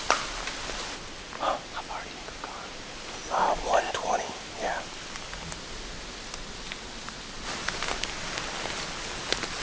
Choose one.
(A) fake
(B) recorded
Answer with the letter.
B